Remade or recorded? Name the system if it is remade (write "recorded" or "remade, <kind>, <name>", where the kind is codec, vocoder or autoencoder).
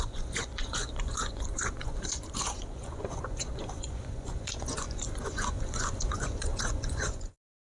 remade, vocoder, Vocos